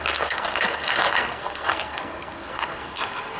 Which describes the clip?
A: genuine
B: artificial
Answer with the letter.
B